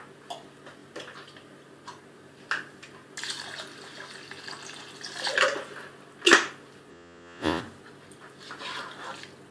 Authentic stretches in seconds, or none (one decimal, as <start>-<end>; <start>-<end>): 0.0-6.9; 7.6-9.5